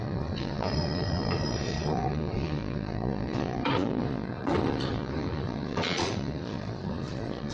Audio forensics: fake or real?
fake